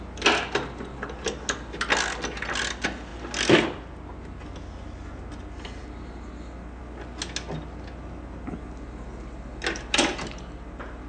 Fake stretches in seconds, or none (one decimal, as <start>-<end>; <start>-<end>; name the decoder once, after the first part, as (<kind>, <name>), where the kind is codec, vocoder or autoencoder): none